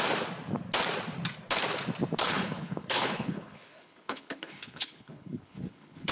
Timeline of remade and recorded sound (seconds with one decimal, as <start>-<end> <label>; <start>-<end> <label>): 0.0-2.2 recorded; 2.2-6.1 remade

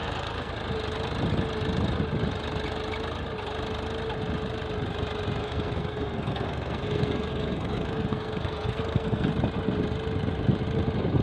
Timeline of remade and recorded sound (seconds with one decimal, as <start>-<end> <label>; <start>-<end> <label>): 0.0-0.5 remade; 0.5-5.4 recorded; 5.4-9.3 remade; 9.3-11.2 recorded

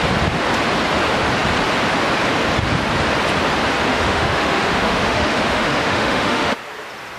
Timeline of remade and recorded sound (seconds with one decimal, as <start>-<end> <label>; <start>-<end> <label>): 0.0-3.9 recorded; 3.9-6.6 remade; 6.6-7.2 recorded

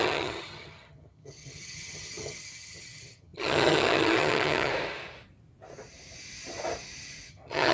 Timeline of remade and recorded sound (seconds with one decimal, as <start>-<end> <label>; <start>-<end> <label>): 0.0-4.7 remade; 4.7-7.3 recorded; 7.3-7.7 remade